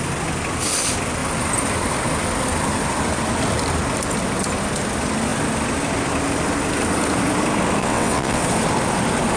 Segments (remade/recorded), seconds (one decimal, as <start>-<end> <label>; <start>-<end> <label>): 0.0-7.8 recorded; 7.8-8.4 remade; 8.4-9.4 recorded